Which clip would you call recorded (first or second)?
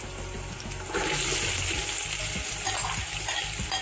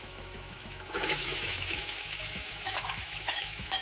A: first